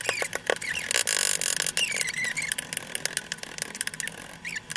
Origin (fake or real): real